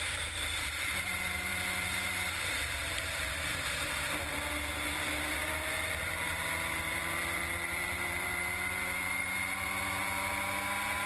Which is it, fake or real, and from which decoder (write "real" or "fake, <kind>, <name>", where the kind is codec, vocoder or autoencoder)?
fake, vocoder, BigVGAN v2